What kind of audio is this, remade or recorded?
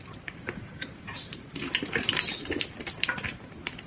remade